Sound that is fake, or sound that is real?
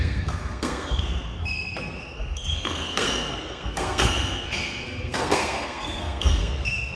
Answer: fake